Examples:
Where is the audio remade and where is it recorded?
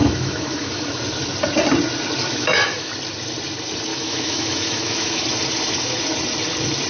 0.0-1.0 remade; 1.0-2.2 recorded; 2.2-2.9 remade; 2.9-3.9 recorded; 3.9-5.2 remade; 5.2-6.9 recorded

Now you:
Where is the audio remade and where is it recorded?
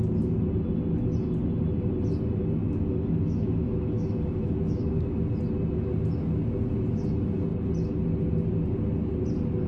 0.0-2.6 recorded; 2.6-5.3 remade; 5.3-9.7 recorded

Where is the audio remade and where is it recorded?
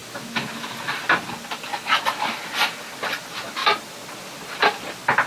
0.0-3.6 recorded; 3.6-5.3 remade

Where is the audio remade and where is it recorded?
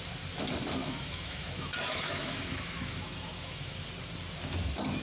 0.0-0.8 recorded; 0.8-3.8 remade; 3.8-5.0 recorded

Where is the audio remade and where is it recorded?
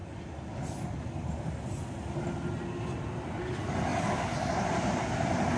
0.0-5.6 recorded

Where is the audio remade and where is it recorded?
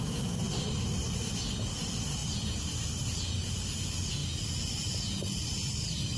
0.0-6.2 recorded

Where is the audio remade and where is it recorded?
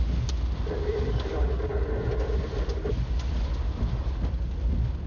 0.0-5.1 recorded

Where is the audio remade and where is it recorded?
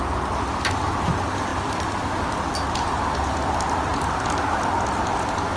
0.0-5.6 recorded